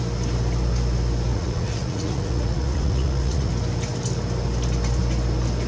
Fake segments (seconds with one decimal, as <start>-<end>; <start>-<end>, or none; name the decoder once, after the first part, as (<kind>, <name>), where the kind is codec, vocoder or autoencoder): 1.3-3.5 (vocoder, Vocos)

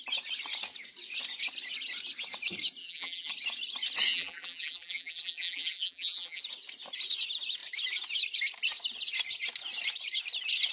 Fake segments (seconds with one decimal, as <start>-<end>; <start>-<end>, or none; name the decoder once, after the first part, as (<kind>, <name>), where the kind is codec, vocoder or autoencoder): 2.8-3.3 (vocoder, BigVGAN v2); 4.1-6.4

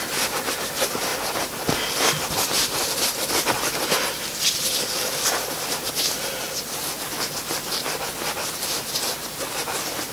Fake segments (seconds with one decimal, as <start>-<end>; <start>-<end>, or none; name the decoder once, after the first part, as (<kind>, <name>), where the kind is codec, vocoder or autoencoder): none

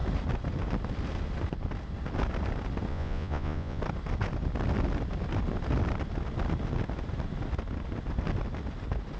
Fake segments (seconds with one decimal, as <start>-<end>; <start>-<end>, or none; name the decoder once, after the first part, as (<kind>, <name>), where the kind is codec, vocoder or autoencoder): 2.9-3.8 (vocoder, Vocos)

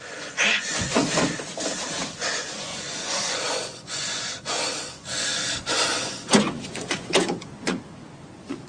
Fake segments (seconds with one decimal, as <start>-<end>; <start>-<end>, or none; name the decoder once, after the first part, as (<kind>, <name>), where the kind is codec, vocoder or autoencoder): 0.0-1.0 (vocoder, Vocos); 2.2-8.7

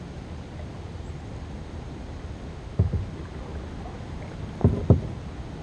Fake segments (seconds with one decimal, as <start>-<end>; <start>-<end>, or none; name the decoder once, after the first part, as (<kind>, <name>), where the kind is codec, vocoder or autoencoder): 2.5-3.0 (autoencoder, DAC-VAE)